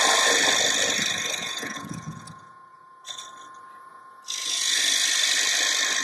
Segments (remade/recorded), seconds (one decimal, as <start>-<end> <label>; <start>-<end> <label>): 0.0-1.4 recorded; 1.4-3.2 remade; 3.2-3.9 recorded; 3.9-4.8 remade; 4.8-6.0 recorded